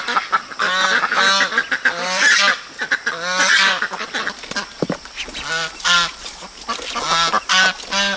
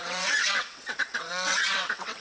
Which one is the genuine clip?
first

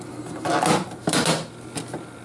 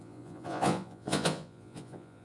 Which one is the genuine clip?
first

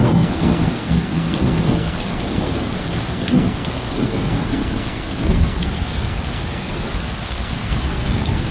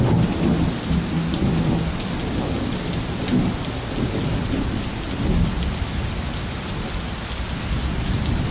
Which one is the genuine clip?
second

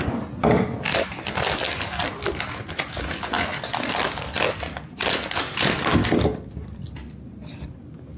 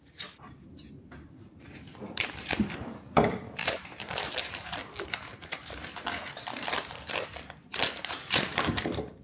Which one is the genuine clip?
first